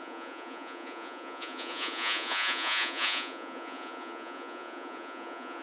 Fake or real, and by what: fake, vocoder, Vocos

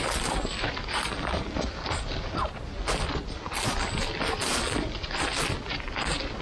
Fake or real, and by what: real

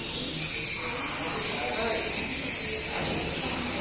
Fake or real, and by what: real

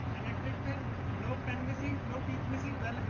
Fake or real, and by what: real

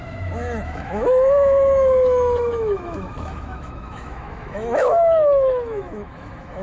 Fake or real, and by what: fake, autoencoder, DAC-VAE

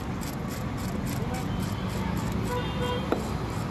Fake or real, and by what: real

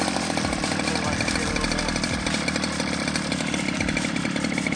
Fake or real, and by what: real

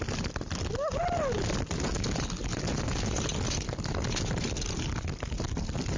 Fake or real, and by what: real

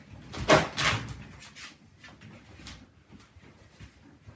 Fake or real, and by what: real